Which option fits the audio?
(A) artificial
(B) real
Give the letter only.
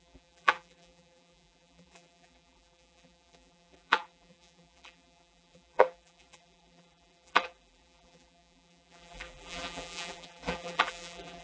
A